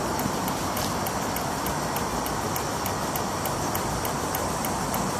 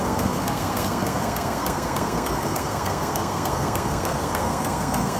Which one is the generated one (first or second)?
second